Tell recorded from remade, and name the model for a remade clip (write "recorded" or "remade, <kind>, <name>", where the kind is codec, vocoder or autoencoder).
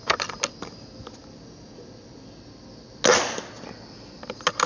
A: recorded